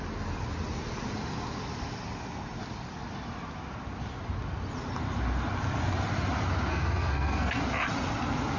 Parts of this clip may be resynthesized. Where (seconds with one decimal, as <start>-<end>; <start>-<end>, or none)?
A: 6.7-7.6